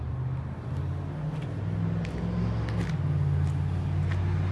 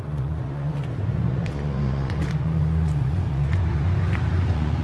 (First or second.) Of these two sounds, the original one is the first